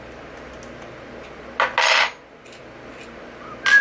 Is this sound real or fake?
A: real